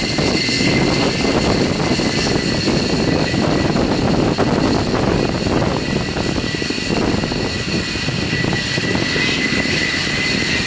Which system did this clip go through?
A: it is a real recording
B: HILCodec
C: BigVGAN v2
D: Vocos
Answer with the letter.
A